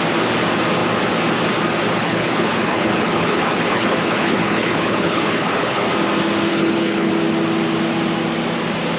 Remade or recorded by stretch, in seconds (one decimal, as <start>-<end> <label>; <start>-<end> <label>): 0.0-2.0 recorded; 2.0-5.8 remade; 5.8-6.5 recorded; 6.5-7.1 remade; 7.1-9.0 recorded